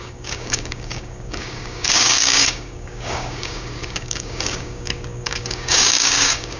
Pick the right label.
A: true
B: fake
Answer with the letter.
B